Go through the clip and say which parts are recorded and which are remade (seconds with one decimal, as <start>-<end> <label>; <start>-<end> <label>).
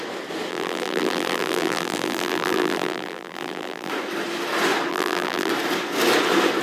0.0-0.5 recorded; 0.5-3.9 remade; 3.9-4.9 recorded; 4.9-5.5 remade; 5.5-6.6 recorded